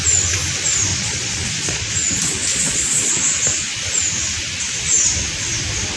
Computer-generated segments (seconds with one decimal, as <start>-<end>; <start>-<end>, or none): 0.9-1.9; 2.5-3.1